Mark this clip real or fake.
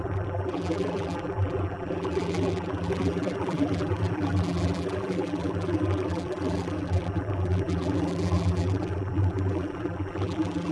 fake